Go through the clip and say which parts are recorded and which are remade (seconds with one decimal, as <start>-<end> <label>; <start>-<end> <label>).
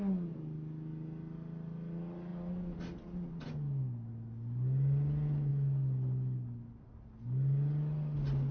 0.0-8.5 recorded